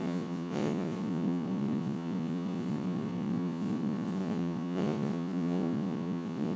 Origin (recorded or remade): remade